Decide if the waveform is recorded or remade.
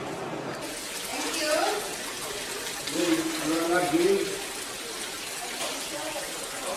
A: recorded